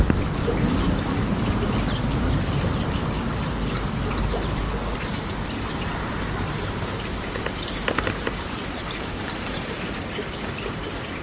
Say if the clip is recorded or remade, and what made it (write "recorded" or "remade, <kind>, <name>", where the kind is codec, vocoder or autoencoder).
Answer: remade, vocoder, BigVGAN v2